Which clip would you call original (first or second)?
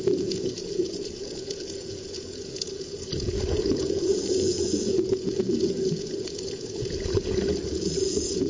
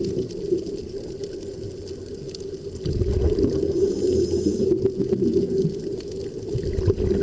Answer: second